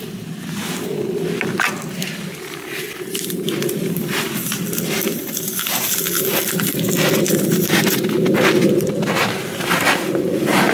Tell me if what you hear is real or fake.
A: real